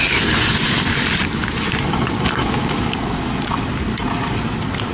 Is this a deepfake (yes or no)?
no